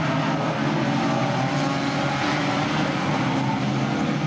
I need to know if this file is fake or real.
real